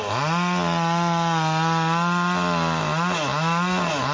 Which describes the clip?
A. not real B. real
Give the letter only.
B